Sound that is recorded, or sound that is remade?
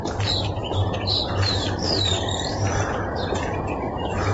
remade